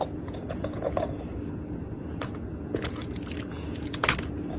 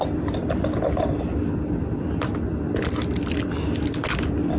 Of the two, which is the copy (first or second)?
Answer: first